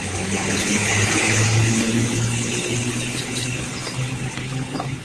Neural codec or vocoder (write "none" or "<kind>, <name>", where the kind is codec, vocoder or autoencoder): codec, HILCodec